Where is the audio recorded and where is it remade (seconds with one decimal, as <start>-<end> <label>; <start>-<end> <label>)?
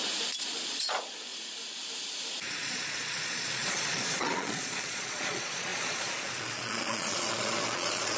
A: 0.0-0.7 recorded; 0.7-1.3 remade; 1.3-2.5 recorded; 2.5-8.2 remade